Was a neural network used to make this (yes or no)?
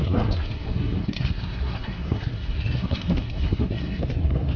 yes